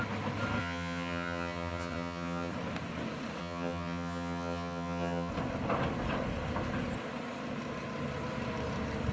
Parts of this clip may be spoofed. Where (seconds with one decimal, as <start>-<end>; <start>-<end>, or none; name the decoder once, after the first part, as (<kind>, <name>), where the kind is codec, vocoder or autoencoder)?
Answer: 0.6-2.5 (vocoder, HiFi-GAN); 3.4-5.3